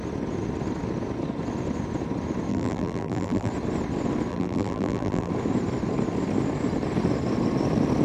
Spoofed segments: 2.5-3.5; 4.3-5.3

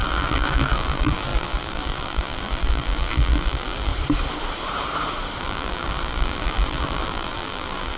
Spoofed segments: 0.0-3.9; 5.4-8.0